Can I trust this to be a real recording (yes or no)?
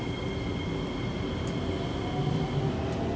yes